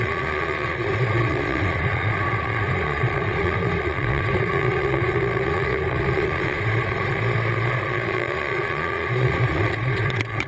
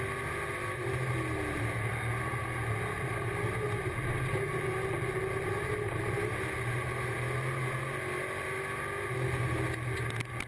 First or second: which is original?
second